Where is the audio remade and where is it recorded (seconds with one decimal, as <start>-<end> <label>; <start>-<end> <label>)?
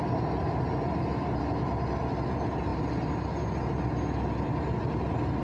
0.0-5.4 recorded